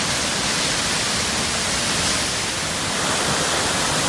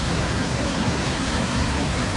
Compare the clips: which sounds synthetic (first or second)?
second